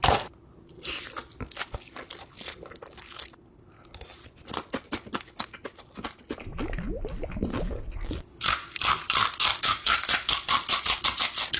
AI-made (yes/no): no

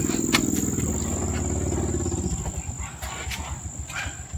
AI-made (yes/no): no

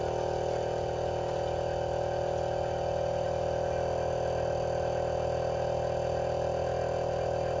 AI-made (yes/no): no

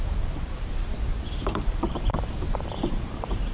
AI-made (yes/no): yes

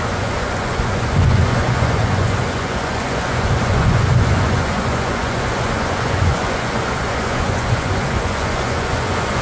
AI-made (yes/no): yes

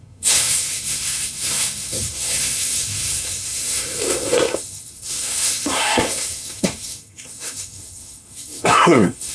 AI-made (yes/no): yes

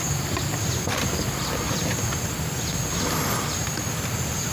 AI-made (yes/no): no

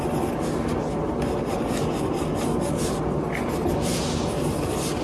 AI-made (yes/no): no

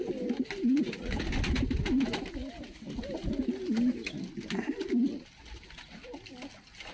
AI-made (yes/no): no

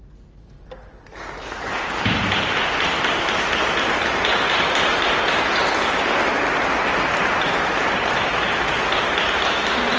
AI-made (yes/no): no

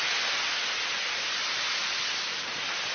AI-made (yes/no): no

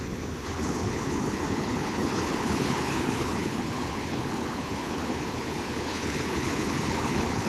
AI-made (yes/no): yes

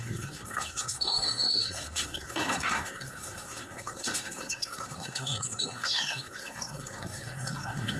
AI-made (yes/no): yes